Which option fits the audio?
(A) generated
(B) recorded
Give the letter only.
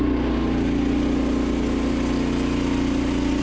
B